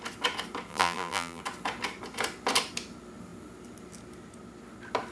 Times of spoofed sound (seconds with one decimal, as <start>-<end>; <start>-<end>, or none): 0.7-1.4